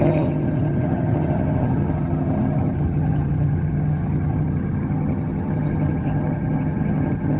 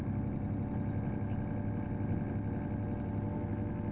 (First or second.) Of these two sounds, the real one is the second